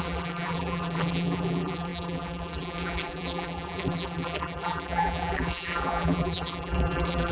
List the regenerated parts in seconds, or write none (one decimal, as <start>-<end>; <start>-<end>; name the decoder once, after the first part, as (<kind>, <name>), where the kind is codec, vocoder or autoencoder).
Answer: 0.0-7.3 (vocoder, BigVGAN v2)